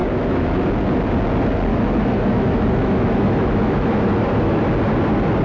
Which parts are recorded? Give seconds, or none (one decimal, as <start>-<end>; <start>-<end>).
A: 0.7-1.7; 4.6-5.4

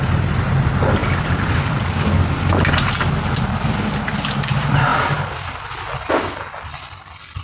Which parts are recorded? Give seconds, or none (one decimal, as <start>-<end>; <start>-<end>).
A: 0.0-7.4

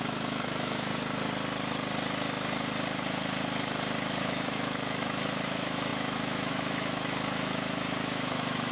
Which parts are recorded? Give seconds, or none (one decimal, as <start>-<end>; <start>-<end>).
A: 0.9-4.2

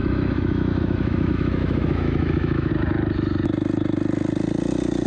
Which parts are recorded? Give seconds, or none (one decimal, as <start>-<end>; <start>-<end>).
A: 2.7-5.1

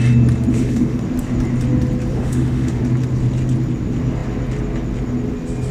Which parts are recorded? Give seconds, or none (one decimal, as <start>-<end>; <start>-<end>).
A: 0.0-0.5; 1.0-2.1; 2.8-5.7

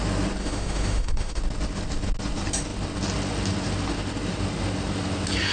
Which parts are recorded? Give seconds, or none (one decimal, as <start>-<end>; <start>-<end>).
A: 0.0-0.4; 1.4-5.5

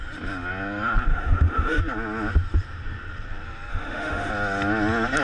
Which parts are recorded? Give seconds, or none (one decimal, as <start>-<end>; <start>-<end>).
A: 0.0-1.1; 1.8-3.7; 4.3-5.2